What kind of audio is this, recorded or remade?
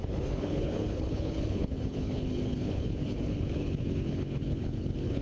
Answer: remade